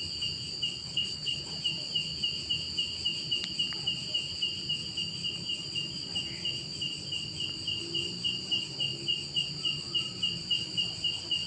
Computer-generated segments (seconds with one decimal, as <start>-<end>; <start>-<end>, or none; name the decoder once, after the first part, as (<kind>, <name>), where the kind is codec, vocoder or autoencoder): 0.8-1.5 (codec, HILCodec)